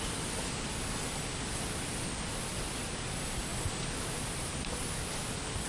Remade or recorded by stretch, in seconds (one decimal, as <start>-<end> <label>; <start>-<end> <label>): 0.0-5.7 recorded